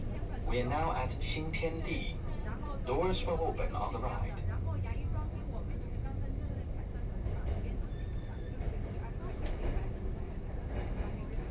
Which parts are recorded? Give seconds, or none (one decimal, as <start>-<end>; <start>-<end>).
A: 0.0-11.5